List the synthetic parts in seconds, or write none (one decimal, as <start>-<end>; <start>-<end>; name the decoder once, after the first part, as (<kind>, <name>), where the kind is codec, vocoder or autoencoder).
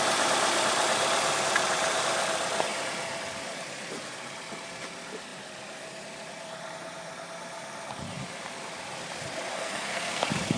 9.5-10.2 (codec, SNAC)